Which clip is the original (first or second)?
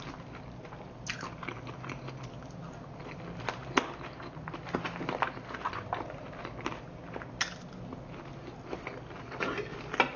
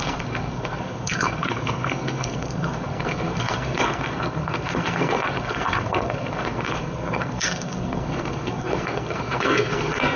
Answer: first